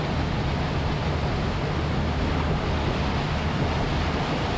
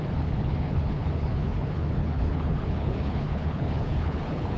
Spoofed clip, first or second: second